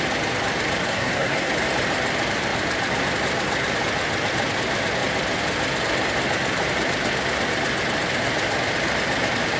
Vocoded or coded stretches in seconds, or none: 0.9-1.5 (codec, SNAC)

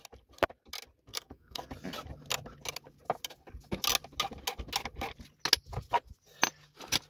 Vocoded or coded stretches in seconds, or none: 1.1-1.7 (codec, SNAC)

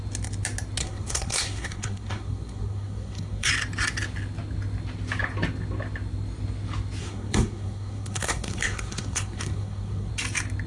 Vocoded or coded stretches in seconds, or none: 0.8-3.5 (codec, SNAC); 7.0-10.1